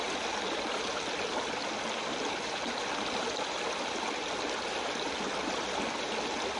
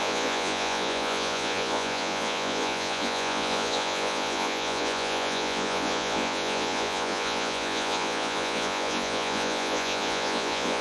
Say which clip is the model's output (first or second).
second